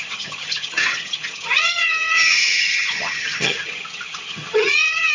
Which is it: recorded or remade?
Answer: remade